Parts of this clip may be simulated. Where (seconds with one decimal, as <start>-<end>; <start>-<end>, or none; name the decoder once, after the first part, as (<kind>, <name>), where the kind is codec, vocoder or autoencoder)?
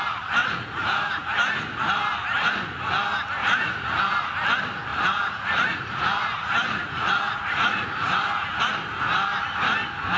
0.4-1.8 (vocoder, Vocos); 3.4-4.0; 4.9-8.6